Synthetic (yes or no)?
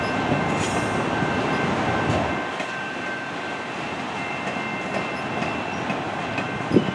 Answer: no